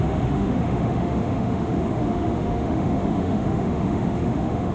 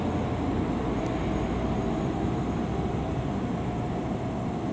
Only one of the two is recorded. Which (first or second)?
second